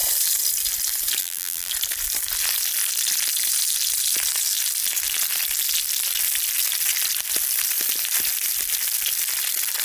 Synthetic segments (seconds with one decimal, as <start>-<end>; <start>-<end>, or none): 1.2-1.7